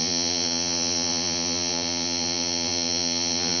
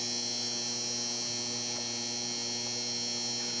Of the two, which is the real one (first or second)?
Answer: second